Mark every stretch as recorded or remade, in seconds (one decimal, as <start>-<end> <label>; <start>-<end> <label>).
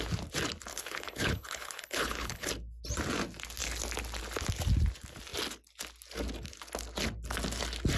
0.0-0.7 recorded; 0.7-2.5 remade; 2.5-8.0 recorded